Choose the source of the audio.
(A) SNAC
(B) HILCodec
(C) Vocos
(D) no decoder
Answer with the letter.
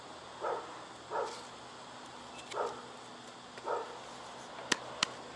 D